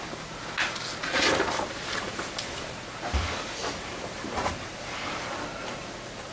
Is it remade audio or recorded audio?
recorded